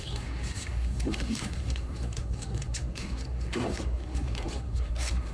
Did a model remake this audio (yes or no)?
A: yes